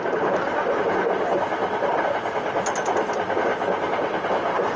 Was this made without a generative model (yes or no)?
yes